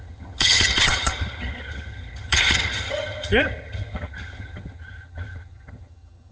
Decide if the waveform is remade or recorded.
remade